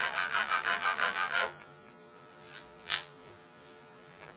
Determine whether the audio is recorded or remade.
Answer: remade